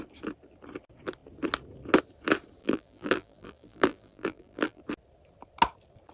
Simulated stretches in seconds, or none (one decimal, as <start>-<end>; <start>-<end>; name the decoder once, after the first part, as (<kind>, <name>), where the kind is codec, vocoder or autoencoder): 2.6-4.8 (vocoder, BigVGAN v2)